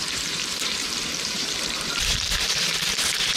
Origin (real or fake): fake